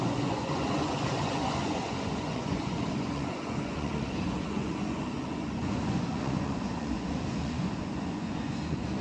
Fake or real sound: fake